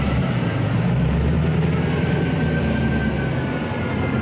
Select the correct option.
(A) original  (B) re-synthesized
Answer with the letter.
A